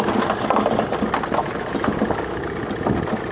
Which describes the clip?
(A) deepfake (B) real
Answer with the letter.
B